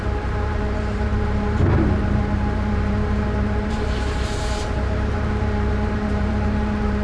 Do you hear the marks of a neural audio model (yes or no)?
yes